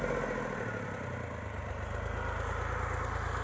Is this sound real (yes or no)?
yes